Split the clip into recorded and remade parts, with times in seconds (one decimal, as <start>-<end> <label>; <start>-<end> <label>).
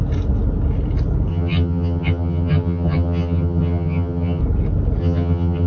0.0-1.3 recorded; 1.3-4.4 remade; 4.4-5.0 recorded; 5.0-5.7 remade